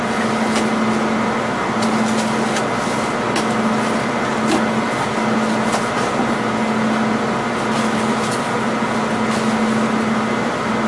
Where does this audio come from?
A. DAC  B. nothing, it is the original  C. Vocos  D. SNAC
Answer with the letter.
B